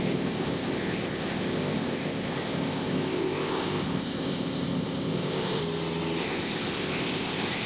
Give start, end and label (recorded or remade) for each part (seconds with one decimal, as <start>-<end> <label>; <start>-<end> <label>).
0.0-5.6 remade; 5.6-6.2 recorded; 6.2-7.7 remade